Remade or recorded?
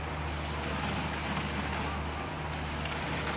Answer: recorded